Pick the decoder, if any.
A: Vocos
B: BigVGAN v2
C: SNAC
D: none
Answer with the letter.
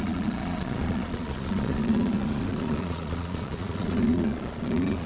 A